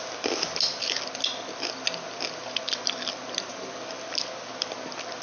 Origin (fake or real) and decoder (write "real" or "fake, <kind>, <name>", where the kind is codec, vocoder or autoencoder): real